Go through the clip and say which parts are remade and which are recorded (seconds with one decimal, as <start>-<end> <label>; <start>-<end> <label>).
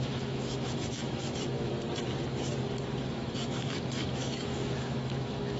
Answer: 0.0-1.7 remade; 1.7-3.1 recorded; 3.1-5.6 remade